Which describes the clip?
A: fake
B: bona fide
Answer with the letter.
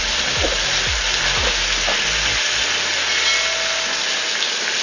B